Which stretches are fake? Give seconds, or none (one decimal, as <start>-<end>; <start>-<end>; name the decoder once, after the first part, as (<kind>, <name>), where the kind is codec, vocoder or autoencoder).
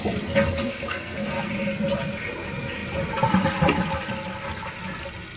0.6-1.5 (codec, SNAC)